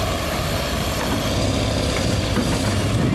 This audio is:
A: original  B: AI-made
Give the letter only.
B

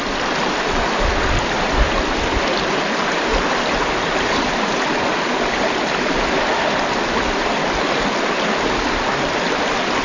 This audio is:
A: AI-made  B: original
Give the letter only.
B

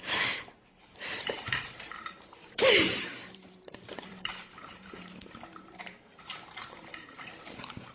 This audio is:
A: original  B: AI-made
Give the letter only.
B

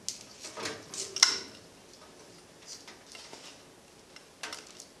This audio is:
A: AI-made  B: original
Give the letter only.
B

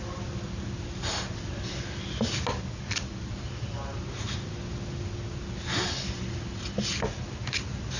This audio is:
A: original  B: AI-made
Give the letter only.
A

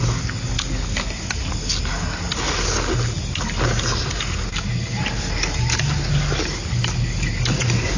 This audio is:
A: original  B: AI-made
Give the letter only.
A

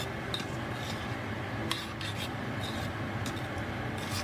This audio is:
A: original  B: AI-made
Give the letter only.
A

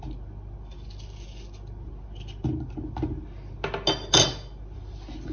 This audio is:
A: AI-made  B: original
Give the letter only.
B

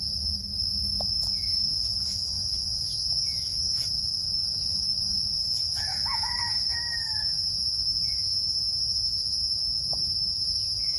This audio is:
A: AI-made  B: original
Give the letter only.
A